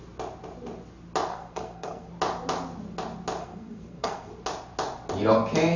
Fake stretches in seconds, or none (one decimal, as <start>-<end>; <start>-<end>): 1.3-2.1; 3.4-4.3